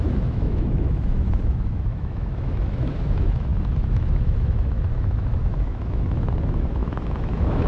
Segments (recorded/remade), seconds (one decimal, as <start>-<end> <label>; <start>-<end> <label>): 0.0-7.7 remade